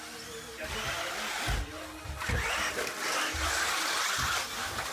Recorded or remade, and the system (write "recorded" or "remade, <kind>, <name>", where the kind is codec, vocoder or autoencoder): recorded